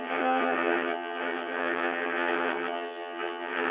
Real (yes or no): no